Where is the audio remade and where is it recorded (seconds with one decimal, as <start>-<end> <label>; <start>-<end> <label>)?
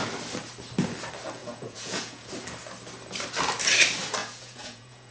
0.0-1.4 recorded; 1.4-2.3 remade; 2.3-4.2 recorded; 4.2-5.1 remade